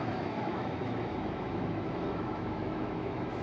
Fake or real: fake